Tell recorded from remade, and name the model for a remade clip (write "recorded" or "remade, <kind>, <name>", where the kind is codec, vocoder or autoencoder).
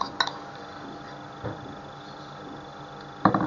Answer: recorded